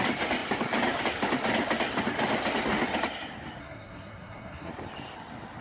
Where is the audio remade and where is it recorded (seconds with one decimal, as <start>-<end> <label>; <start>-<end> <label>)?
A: 0.0-3.6 recorded; 3.6-4.7 remade; 4.7-5.6 recorded